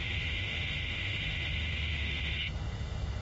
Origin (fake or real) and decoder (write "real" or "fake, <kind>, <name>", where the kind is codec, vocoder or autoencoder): fake, autoencoder, DAC-VAE